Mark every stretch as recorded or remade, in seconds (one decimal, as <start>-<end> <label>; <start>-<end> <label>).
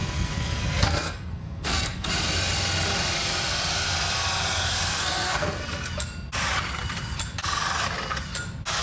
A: 0.0-2.1 remade; 2.1-4.9 recorded; 4.9-5.9 remade; 5.9-8.8 recorded